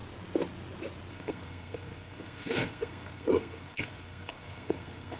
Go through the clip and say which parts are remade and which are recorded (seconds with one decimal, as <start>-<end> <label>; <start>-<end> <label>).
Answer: 0.0-1.1 recorded; 1.1-5.2 remade